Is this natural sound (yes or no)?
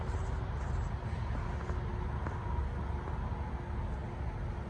yes